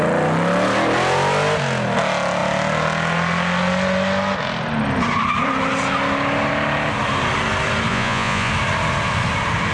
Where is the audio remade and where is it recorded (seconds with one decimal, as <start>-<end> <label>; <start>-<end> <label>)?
0.0-7.9 recorded; 7.9-8.5 remade; 8.5-9.7 recorded